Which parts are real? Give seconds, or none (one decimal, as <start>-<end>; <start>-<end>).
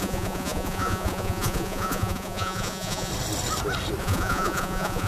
3.1-4.0